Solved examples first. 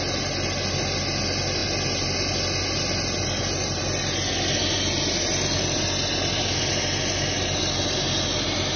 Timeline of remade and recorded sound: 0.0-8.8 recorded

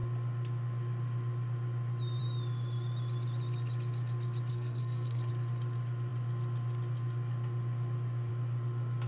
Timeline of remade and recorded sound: 0.0-4.5 recorded; 4.5-5.3 remade; 5.3-9.1 recorded

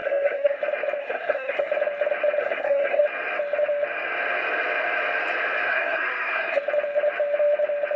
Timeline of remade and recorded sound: 0.0-0.6 remade; 0.6-1.0 recorded; 1.0-1.7 remade; 1.7-2.4 recorded; 2.4-3.0 remade; 3.0-5.7 recorded; 5.7-6.6 remade; 6.6-8.0 recorded

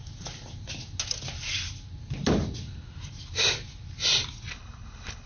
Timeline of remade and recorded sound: 0.0-4.5 recorded; 4.5-5.3 remade